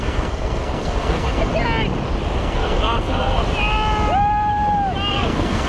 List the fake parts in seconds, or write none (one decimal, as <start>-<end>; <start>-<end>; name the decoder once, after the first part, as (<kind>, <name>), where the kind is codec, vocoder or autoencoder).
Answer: 0.0-1.5 (codec, SNAC); 2.4-3.4; 5.1-5.7